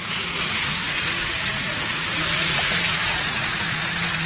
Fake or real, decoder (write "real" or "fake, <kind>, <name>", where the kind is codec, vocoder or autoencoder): fake, vocoder, Vocos